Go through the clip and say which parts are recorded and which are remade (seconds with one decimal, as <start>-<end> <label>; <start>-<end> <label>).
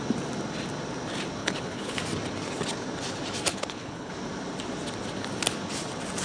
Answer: 0.0-1.4 recorded; 1.4-2.0 remade; 2.0-3.5 recorded; 3.5-4.1 remade; 4.1-6.2 recorded